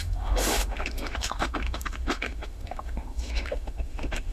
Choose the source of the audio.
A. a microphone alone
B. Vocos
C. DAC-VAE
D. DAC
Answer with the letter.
C